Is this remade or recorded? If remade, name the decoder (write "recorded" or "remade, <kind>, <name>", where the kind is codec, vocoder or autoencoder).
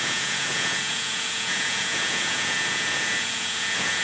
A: remade, vocoder, Vocos